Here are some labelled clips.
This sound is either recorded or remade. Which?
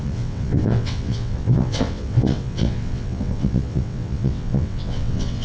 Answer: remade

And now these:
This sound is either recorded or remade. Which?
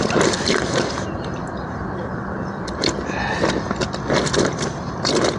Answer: recorded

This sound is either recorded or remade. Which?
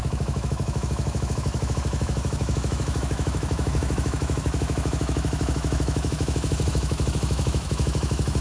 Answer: remade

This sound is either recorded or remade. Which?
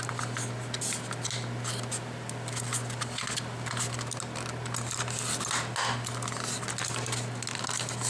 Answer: recorded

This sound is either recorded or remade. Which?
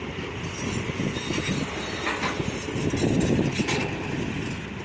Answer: recorded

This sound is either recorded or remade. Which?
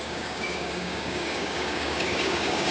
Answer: remade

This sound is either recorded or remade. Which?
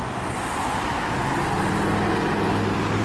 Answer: recorded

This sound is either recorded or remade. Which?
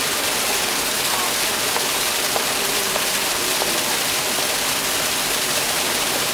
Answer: recorded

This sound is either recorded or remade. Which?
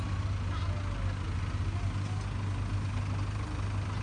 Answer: recorded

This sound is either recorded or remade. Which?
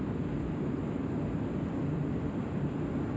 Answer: recorded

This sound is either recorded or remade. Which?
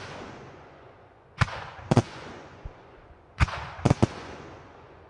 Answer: remade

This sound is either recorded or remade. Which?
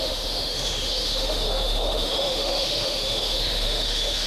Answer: remade